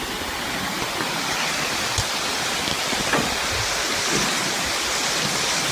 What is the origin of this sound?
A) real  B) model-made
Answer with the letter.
A